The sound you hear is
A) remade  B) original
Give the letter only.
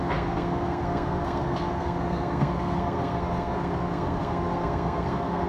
A